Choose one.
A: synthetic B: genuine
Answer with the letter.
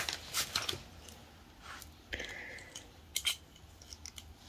B